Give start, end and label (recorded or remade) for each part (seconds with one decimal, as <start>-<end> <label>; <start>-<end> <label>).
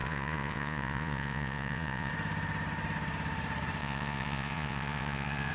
0.0-2.1 remade; 2.1-3.8 recorded; 3.8-5.5 remade